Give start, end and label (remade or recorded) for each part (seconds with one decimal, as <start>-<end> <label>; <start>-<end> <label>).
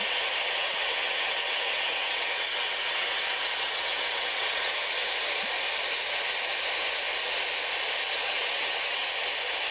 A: 0.0-0.4 recorded; 0.4-4.9 remade; 4.9-8.2 recorded; 8.2-9.1 remade; 9.1-9.7 recorded